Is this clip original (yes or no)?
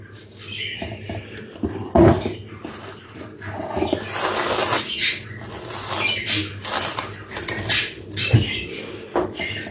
yes